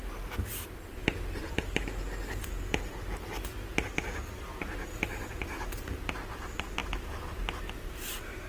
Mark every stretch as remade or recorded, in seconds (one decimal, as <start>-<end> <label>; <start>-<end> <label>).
0.0-8.5 recorded